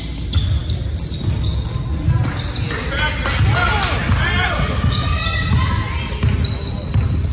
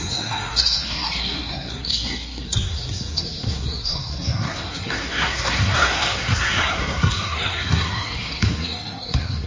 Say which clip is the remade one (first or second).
second